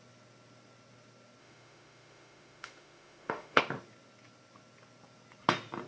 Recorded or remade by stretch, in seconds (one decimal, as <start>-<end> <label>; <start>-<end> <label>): 0.0-1.4 recorded; 1.4-3.6 remade; 3.6-5.9 recorded